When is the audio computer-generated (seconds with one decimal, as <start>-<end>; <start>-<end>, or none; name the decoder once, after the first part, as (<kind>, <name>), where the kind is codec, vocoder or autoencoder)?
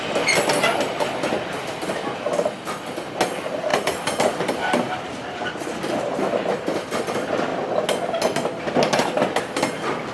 3.7-7.0 (vocoder, BigVGAN v2)